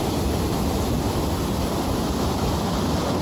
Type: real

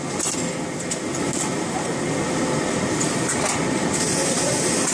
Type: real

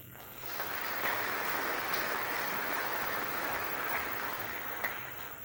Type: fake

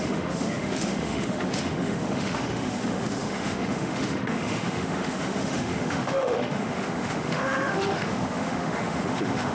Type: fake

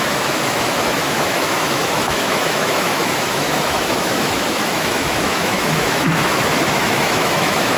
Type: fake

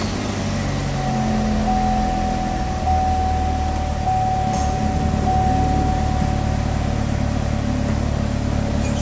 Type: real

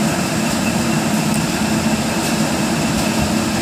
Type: real